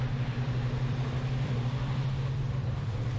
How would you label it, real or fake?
fake